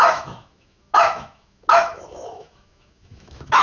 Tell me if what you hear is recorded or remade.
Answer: remade